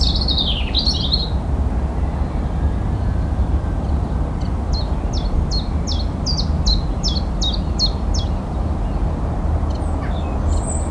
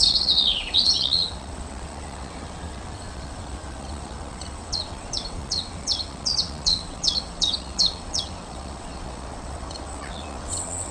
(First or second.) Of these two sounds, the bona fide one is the first